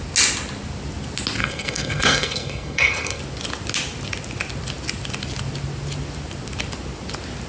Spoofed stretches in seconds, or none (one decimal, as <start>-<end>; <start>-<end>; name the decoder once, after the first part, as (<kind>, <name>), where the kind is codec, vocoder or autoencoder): 1.4-3.2 (codec, SNAC)